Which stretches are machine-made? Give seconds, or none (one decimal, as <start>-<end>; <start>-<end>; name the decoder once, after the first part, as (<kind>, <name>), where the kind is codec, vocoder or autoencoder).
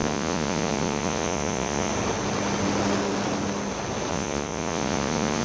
0.0-1.9 (vocoder, Vocos); 4.1-5.4